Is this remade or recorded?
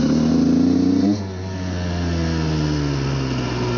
recorded